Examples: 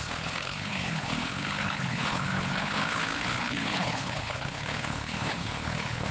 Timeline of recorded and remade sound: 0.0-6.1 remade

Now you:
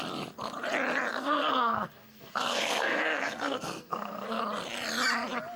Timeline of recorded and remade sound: 0.0-1.1 recorded; 1.1-4.4 remade; 4.4-5.6 recorded

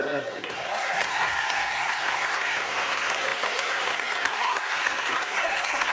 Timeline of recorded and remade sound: 0.0-5.9 remade

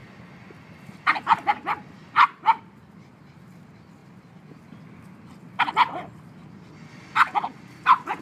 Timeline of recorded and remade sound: 0.0-8.2 recorded

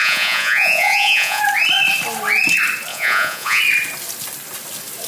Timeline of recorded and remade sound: 0.0-1.4 remade; 1.4-2.9 recorded; 2.9-3.6 remade; 3.6-5.1 recorded

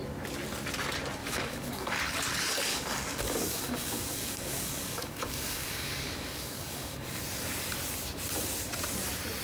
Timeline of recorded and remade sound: 0.0-1.2 recorded; 1.2-2.0 remade; 2.0-2.7 recorded; 2.7-7.2 remade; 7.2-9.4 recorded